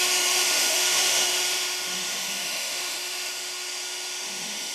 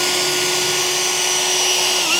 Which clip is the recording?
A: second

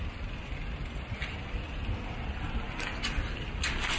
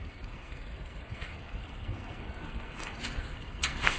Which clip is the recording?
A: first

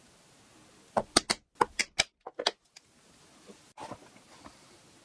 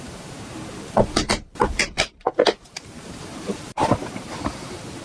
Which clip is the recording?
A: first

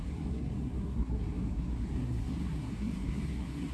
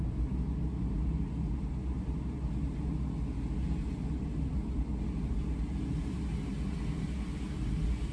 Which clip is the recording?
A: second